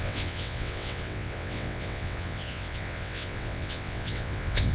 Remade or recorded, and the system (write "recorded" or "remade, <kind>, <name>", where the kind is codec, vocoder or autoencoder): remade, vocoder, WaveNeXt